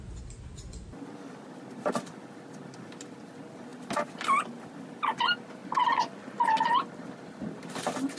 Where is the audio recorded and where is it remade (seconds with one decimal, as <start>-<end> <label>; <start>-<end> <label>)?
0.0-8.2 recorded